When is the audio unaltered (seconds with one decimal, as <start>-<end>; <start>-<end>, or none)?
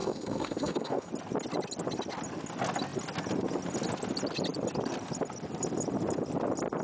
1.1-6.8